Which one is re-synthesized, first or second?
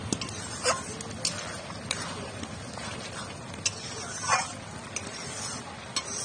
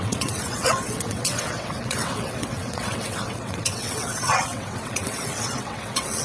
second